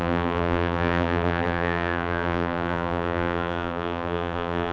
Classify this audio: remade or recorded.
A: remade